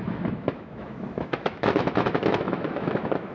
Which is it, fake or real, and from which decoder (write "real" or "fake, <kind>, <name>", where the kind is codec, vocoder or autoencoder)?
fake, autoencoder, DAC-VAE